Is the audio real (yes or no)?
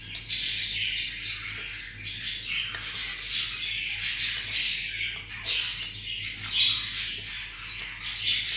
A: yes